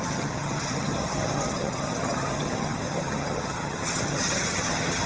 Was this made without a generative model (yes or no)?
no